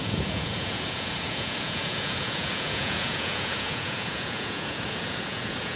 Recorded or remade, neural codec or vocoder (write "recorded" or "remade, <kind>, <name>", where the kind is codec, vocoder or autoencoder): remade, vocoder, Vocos